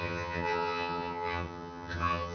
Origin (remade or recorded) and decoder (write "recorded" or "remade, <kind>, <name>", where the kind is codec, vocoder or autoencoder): remade, vocoder, HiFi-GAN